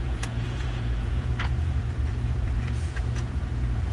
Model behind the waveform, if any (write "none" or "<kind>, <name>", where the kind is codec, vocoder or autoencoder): vocoder, Vocos